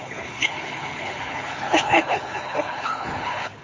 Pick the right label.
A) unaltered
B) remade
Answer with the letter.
B